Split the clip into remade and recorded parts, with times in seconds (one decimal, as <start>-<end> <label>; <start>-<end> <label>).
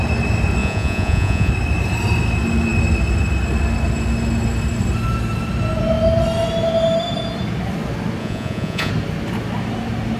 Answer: 0.0-0.6 recorded; 0.6-1.5 remade; 1.5-8.2 recorded; 8.2-8.9 remade; 8.9-10.2 recorded